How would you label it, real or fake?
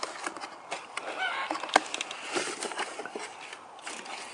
real